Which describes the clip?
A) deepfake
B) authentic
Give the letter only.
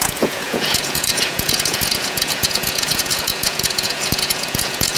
A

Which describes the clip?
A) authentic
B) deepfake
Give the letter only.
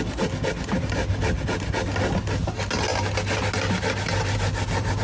A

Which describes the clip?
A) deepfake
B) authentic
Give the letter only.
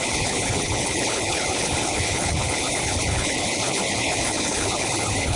A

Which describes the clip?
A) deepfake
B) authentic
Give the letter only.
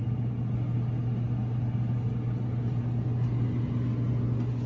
B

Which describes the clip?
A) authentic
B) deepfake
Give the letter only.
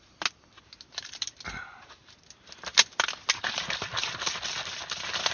A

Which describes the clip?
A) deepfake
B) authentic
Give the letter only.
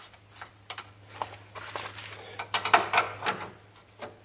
B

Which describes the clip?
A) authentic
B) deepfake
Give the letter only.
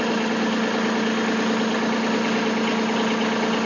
A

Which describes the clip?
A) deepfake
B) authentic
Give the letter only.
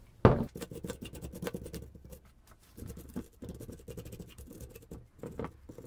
B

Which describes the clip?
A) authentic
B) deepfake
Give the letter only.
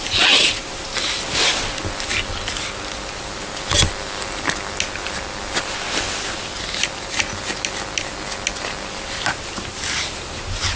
A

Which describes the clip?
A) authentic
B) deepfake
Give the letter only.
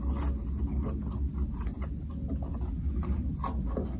A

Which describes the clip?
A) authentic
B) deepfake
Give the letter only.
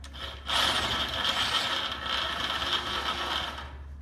A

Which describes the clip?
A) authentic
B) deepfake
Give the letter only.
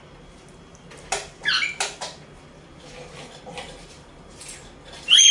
A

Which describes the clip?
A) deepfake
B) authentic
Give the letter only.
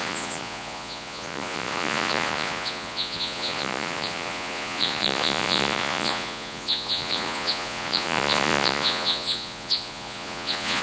A